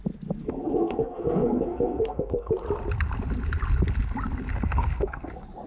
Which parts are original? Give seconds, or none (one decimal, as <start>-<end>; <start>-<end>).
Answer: 0.0-0.4; 2.5-4.5; 5.3-5.7